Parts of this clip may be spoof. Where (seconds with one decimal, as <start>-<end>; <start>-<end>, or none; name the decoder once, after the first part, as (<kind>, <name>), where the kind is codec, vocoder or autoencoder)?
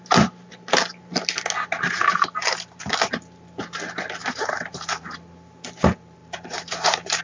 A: 2.1-3.0 (vocoder, BigVGAN v2); 4.2-5.1; 6.2-7.2